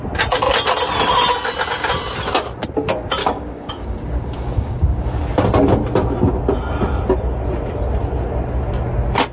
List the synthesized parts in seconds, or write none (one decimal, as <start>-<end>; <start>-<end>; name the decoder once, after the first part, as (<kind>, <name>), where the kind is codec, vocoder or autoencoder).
3.2-5.2 (codec, DAC)